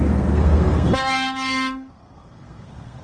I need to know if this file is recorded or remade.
remade